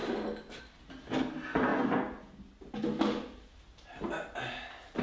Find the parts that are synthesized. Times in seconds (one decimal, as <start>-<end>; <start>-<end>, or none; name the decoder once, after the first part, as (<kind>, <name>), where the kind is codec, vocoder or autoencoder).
none